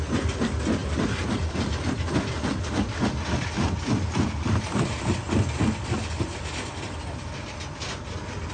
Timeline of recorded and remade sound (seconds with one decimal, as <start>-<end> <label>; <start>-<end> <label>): 0.0-8.5 recorded

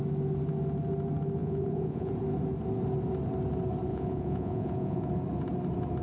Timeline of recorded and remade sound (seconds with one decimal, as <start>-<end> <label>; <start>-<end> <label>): 0.0-1.4 recorded; 1.4-2.1 remade; 2.1-3.9 recorded; 3.9-5.1 remade; 5.1-6.0 recorded